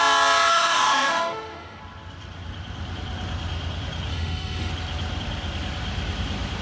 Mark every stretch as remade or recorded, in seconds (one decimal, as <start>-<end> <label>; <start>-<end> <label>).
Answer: 0.0-0.5 recorded; 0.5-1.8 remade; 1.8-4.1 recorded; 4.1-4.7 remade; 4.7-6.6 recorded